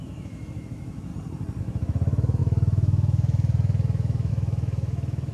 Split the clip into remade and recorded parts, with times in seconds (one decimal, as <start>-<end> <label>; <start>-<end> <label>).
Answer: 0.0-1.1 remade; 1.1-1.6 recorded; 1.6-5.3 remade